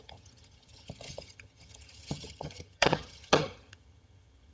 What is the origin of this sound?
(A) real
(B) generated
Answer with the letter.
B